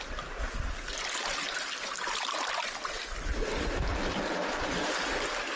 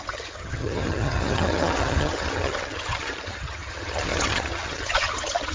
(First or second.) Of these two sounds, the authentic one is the first